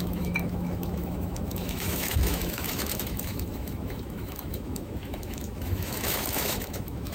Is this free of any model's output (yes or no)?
no